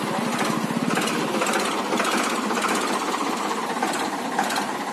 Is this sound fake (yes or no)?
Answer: no